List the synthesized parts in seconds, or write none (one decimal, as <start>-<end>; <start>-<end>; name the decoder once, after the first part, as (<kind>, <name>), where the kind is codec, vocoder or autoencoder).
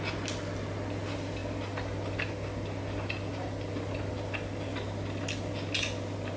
none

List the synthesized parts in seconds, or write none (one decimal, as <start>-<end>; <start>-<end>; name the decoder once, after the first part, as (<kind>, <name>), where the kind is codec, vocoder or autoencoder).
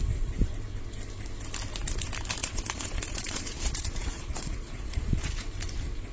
2.4-5.5 (vocoder, Vocos)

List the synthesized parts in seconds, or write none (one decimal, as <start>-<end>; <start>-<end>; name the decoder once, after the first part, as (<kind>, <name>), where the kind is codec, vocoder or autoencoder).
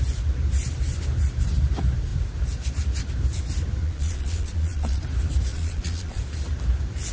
3.8-5.0 (vocoder, Vocos); 5.5-6.2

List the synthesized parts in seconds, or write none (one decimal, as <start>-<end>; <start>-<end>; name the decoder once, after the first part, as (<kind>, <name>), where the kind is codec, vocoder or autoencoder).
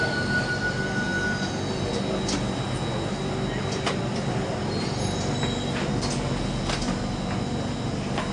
none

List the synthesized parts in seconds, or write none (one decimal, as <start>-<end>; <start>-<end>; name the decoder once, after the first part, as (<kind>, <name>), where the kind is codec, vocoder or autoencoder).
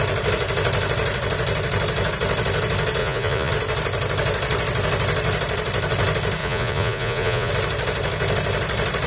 3.0-3.5 (vocoder, Vocos); 6.4-7.5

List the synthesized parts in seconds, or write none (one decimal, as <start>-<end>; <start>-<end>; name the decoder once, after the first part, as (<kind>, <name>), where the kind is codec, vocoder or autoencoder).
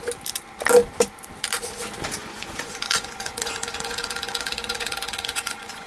2.2-5.9 (vocoder, Vocos)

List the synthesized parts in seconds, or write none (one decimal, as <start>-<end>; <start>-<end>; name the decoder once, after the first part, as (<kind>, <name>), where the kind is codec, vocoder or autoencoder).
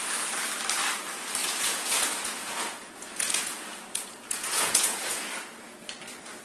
1.4-5.2 (vocoder, Vocos)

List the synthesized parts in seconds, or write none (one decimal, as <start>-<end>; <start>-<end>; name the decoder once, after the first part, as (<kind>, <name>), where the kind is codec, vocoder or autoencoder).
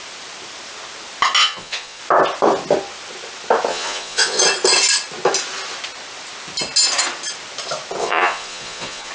1.4-2.0 (vocoder, Vocos); 3.7-4.4; 8.0-9.1